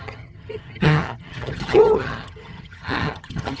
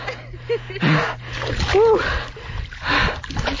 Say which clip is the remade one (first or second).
first